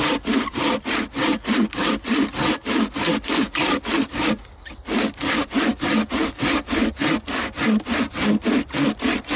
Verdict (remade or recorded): recorded